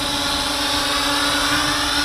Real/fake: real